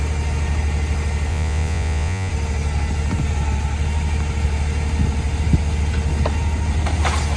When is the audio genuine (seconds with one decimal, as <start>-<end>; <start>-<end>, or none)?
0.0-1.3; 2.3-7.4